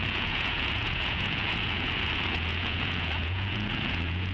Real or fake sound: fake